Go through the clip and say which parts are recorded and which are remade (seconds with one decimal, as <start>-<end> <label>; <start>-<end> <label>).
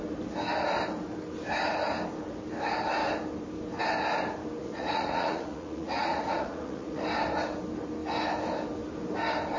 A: 0.0-4.6 recorded; 4.6-7.0 remade; 7.0-9.6 recorded